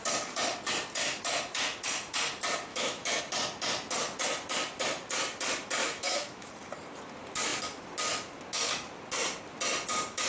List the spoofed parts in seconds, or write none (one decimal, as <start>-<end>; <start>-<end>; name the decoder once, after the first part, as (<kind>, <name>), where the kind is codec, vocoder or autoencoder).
2.7-3.2 (autoencoder, DAC-VAE); 5.8-6.5